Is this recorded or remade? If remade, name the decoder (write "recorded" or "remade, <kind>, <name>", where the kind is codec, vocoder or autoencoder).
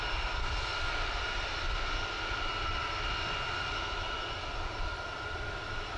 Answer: recorded